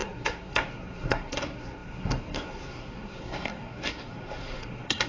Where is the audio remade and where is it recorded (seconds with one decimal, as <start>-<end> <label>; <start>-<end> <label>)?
0.0-5.1 remade